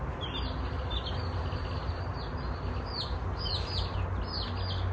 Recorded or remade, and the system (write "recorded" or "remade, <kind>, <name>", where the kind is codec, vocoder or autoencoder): recorded